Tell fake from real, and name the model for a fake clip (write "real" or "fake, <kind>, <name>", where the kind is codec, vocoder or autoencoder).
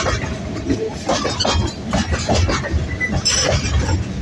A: real